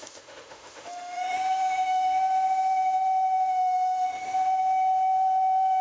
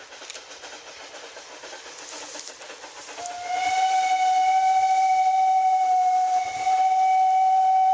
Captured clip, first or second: second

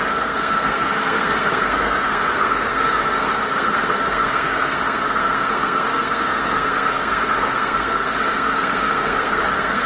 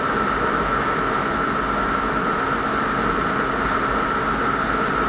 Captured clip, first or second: second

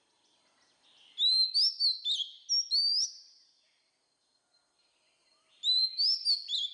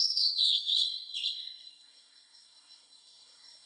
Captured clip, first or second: first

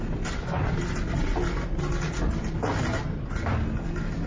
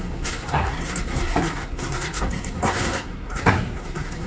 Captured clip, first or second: first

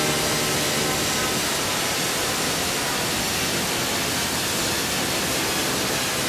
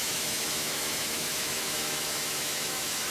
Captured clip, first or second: first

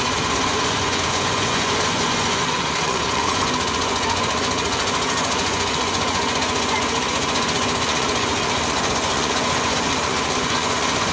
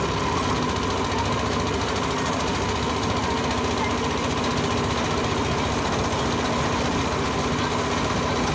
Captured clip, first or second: second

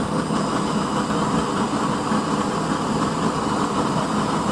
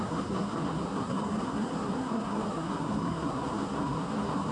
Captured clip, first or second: first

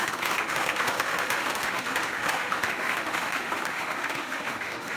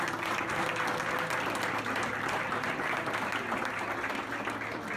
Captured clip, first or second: second